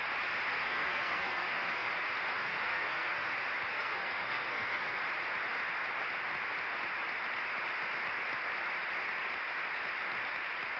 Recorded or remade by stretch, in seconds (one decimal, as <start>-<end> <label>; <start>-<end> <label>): 0.0-0.5 recorded; 0.5-1.9 remade; 1.9-2.4 recorded; 2.4-3.3 remade; 3.3-3.7 recorded; 3.7-5.0 remade; 5.0-10.8 recorded

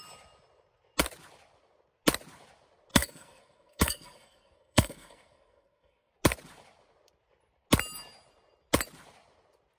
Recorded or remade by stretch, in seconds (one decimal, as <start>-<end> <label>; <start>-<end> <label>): 0.0-2.9 recorded; 2.9-6.1 remade; 6.1-9.8 recorded

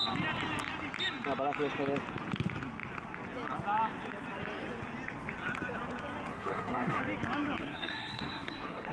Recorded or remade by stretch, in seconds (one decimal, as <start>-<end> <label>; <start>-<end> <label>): 0.0-6.3 recorded; 6.3-7.0 remade; 7.0-7.6 recorded; 7.6-8.9 remade

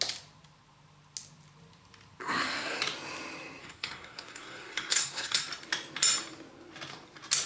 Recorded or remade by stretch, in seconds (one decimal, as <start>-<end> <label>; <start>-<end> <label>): 0.0-2.2 recorded; 2.2-2.8 remade; 2.8-3.6 recorded; 3.6-5.4 remade; 5.4-7.5 recorded

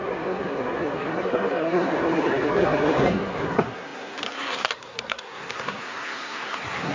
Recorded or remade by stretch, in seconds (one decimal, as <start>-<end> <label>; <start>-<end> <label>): 0.0-6.9 remade

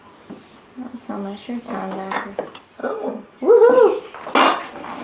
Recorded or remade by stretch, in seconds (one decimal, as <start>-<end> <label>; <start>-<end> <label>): 0.0-2.8 recorded; 2.8-3.4 remade; 3.4-5.0 recorded

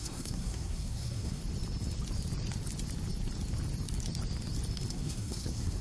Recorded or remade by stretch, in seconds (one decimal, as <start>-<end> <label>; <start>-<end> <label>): 0.0-1.4 remade; 1.4-4.9 recorded; 4.9-5.8 remade

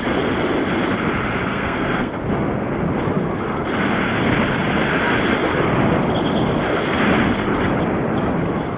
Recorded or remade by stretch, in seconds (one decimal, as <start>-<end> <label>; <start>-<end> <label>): 0.0-1.5 recorded; 1.5-2.2 remade; 2.2-8.8 recorded